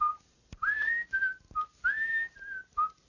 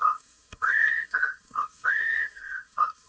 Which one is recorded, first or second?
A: first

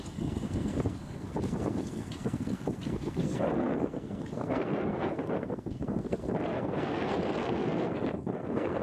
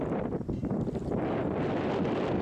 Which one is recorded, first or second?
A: second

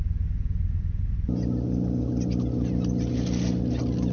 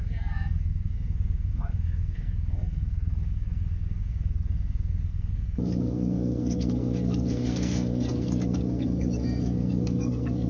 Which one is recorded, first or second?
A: first